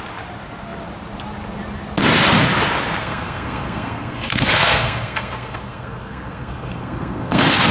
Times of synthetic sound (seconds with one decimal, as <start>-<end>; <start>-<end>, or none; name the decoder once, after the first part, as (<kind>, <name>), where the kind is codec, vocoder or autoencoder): 3.0-7.7 (codec, SNAC)